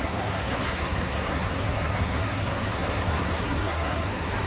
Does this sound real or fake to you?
fake